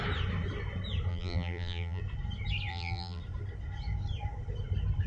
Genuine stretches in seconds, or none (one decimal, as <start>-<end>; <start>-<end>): 0.0-1.1; 2.0-2.7; 3.2-5.1